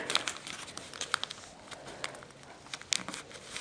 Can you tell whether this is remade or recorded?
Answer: recorded